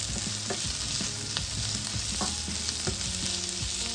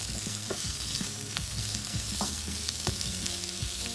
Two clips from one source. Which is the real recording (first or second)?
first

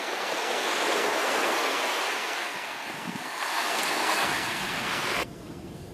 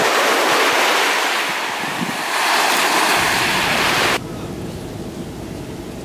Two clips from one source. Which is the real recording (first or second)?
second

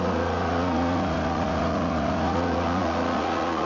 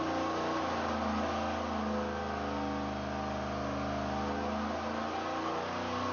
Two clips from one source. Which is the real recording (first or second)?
second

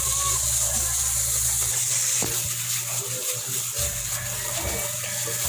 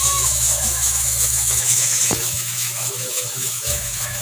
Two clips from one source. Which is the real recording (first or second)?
first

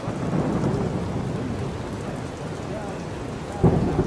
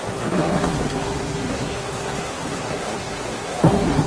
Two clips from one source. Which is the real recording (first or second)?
first